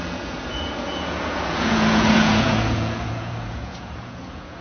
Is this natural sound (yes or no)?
no